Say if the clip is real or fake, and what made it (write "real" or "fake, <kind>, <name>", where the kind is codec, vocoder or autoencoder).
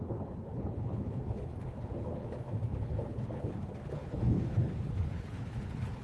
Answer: fake, codec, HILCodec